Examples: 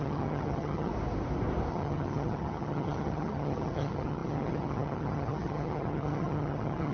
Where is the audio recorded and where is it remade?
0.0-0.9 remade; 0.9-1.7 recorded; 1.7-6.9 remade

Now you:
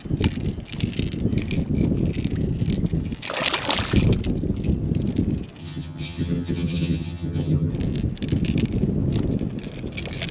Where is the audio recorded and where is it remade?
0.0-5.6 recorded; 5.6-7.7 remade; 7.7-10.3 recorded

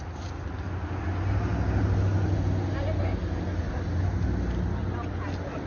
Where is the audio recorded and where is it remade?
0.0-5.7 recorded